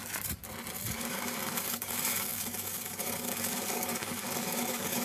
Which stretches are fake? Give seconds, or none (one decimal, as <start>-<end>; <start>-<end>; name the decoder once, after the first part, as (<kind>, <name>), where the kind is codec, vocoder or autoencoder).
0.9-5.0 (codec, DAC)